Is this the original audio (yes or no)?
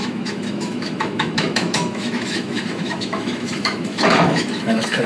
no